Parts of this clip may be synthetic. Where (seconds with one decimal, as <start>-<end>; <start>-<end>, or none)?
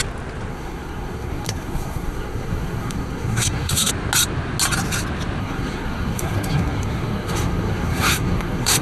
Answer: 0.5-3.9; 5.4-8.8